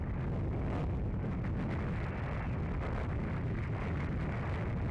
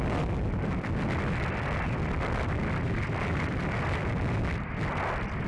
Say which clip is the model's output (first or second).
second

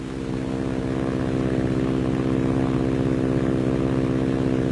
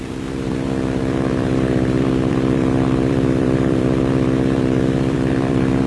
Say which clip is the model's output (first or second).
second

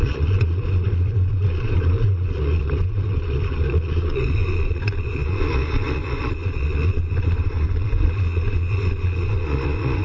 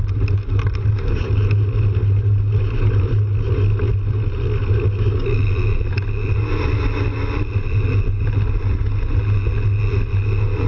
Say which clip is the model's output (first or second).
first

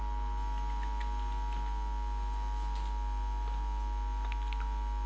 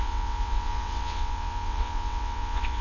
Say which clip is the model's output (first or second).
second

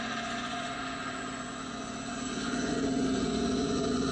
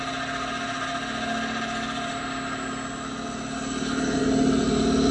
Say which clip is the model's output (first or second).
first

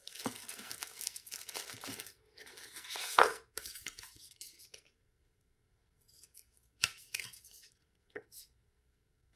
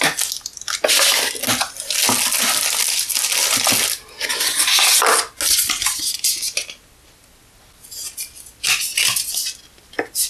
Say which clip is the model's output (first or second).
first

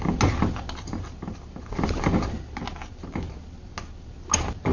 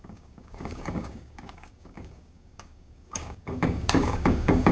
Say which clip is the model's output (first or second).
second